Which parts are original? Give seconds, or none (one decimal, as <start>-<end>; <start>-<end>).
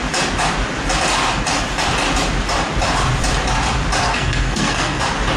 0.0-4.0; 5.0-5.4